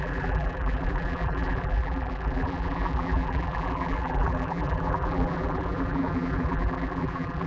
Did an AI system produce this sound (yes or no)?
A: yes